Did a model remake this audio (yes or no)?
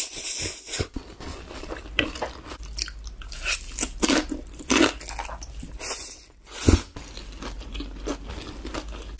no